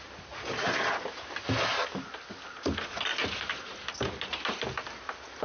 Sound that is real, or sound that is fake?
real